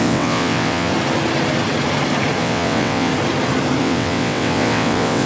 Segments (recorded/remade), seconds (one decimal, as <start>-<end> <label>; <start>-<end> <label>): 0.0-0.9 remade; 0.9-2.4 recorded; 2.4-3.1 remade; 3.1-3.8 recorded; 3.8-5.3 remade